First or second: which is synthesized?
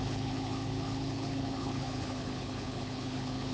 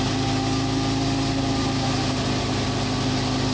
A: first